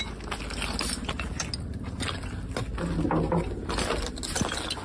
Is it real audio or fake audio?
real